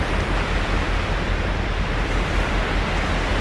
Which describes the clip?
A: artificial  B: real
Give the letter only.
B